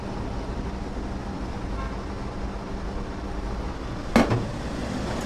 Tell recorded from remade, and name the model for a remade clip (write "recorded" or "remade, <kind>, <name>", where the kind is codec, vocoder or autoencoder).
recorded